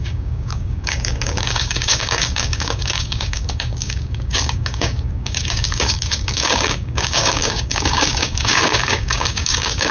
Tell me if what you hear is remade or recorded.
remade